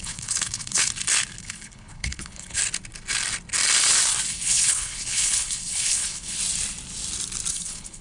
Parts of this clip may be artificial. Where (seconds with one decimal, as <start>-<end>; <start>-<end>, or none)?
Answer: 0.0-0.9; 1.4-2.6; 4.3-6.4; 7.5-8.0